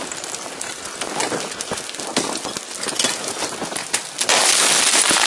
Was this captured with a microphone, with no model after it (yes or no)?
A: yes